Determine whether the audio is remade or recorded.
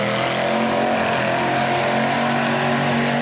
recorded